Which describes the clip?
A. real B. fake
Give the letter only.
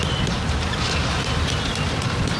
A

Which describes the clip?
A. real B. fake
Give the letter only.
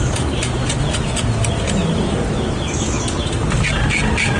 A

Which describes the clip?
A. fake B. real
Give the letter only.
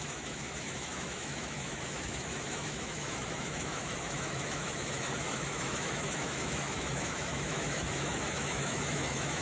A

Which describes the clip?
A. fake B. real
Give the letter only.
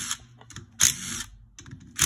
B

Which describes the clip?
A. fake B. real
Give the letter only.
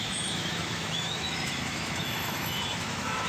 A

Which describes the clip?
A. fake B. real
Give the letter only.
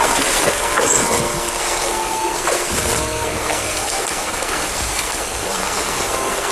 A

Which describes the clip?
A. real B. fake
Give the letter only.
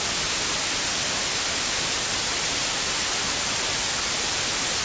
A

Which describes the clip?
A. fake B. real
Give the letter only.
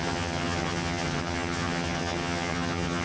A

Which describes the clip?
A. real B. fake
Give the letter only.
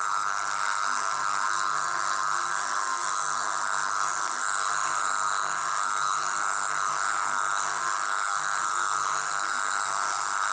B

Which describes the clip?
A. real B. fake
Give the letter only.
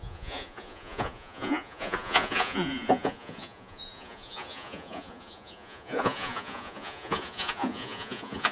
B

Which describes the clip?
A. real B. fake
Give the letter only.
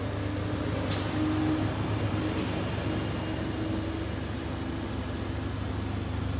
A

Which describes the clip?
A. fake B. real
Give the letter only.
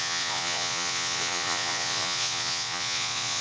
A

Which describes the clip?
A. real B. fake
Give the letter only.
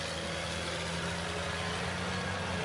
A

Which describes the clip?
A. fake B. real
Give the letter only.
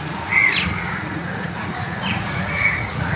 A